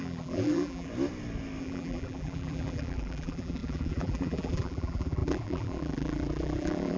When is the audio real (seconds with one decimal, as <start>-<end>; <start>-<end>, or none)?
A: 0.9-1.6